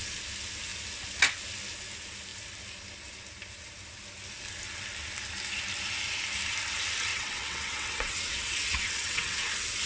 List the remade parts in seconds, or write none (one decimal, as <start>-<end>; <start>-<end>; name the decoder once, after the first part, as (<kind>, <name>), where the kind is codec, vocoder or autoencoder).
7.1-9.4 (vocoder, WaveNeXt)